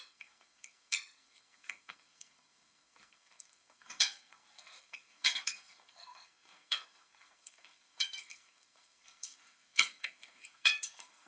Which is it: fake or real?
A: fake